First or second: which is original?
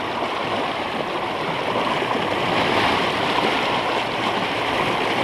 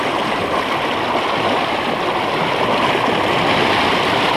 second